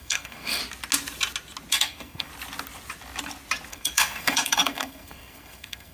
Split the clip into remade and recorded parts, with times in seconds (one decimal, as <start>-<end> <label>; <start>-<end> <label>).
0.0-0.6 remade; 0.6-1.7 recorded; 1.7-2.3 remade; 2.3-3.7 recorded; 3.7-5.9 remade